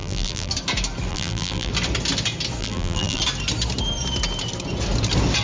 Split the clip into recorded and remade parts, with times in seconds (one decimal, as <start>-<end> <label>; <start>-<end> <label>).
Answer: 0.0-0.5 remade; 0.5-1.1 recorded; 1.1-1.7 remade; 1.7-2.6 recorded; 2.6-3.2 remade; 3.2-5.4 recorded